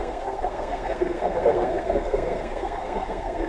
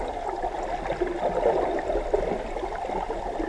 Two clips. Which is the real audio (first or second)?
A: second